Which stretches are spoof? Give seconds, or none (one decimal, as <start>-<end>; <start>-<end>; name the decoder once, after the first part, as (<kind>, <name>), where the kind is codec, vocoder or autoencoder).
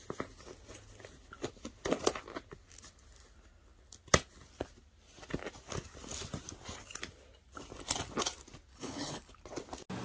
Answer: 8.7-9.3 (codec, HILCodec)